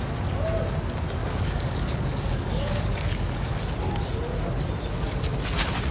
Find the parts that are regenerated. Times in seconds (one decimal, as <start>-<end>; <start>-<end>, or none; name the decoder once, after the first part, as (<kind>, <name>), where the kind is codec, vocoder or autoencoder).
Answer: 1.2-3.6 (codec, DAC)